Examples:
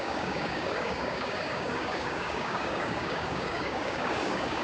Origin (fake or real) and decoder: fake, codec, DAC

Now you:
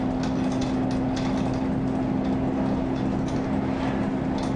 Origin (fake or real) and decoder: real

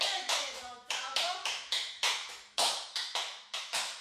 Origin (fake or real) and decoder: fake, autoencoder, DAC-VAE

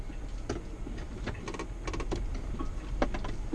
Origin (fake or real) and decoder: real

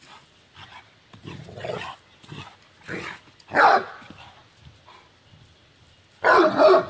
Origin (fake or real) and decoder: real